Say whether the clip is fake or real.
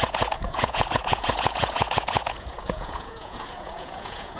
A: fake